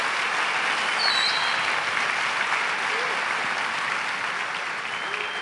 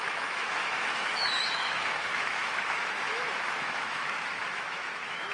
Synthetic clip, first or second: second